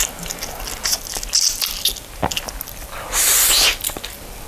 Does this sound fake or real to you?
real